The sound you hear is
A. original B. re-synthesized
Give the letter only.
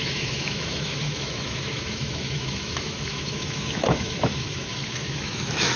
B